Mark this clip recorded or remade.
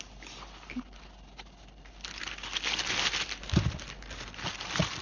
recorded